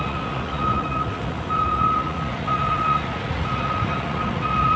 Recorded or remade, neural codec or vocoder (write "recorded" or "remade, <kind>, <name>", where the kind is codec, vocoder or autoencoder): remade, vocoder, Vocos